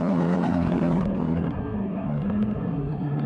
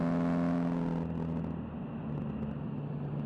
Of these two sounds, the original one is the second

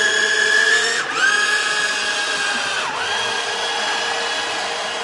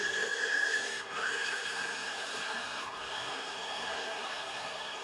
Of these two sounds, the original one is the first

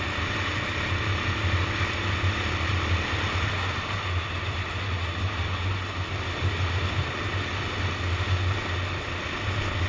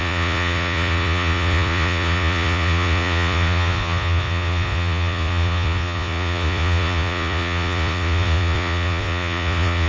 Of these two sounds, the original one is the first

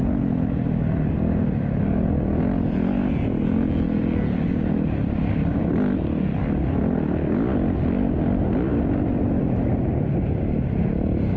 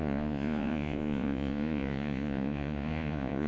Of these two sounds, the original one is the first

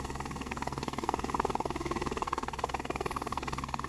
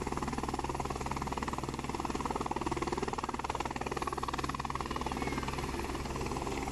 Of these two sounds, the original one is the second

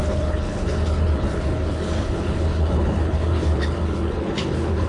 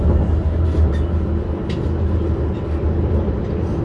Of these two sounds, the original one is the second